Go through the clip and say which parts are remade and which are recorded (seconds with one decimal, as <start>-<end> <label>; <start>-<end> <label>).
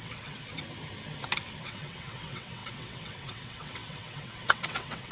0.0-0.4 remade; 0.4-1.6 recorded; 1.6-5.1 remade